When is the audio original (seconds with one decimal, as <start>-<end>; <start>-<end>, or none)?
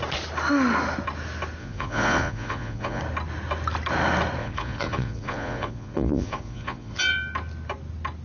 0.0-1.6; 3.0-4.4; 7.0-8.2